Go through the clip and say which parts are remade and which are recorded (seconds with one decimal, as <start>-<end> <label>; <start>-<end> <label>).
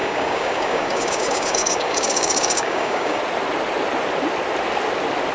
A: 0.0-3.2 remade; 3.2-5.3 recorded